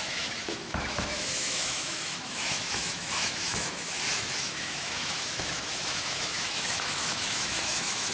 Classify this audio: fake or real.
fake